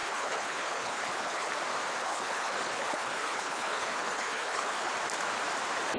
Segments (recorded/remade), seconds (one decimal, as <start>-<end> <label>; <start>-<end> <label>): 0.0-1.5 remade; 1.5-2.0 recorded; 2.0-4.9 remade; 4.9-6.0 recorded